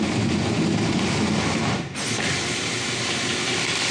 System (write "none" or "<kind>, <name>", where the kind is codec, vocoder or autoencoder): none